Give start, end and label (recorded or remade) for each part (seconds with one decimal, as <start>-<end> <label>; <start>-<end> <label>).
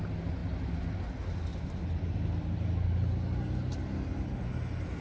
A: 0.0-5.0 recorded